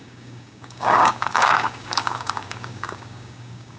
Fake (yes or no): yes